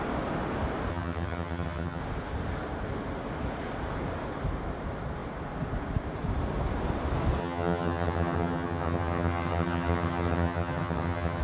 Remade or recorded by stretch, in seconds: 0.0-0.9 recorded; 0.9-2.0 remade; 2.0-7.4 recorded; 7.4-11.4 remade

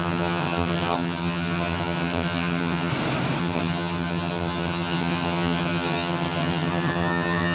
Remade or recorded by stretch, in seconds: 0.0-2.9 remade; 2.9-3.4 recorded; 3.4-7.5 remade